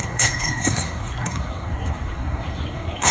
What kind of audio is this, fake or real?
fake